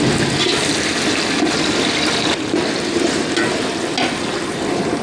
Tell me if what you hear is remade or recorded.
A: recorded